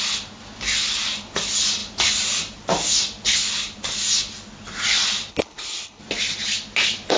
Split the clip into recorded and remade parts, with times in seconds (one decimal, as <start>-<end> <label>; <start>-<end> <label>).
0.0-5.3 recorded; 5.3-6.0 remade; 6.0-7.2 recorded